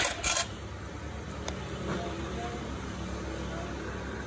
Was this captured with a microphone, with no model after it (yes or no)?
yes